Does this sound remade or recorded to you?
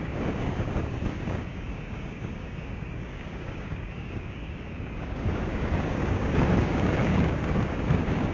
remade